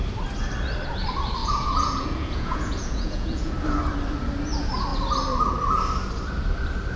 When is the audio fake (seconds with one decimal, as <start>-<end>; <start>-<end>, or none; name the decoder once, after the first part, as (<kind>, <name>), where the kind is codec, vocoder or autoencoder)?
1.4-3.5 (vocoder, Vocos)